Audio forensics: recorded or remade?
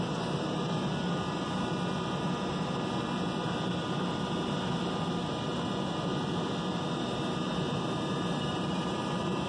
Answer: recorded